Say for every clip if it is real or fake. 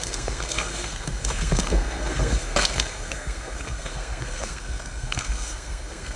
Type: fake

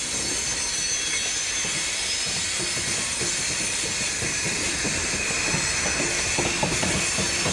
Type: real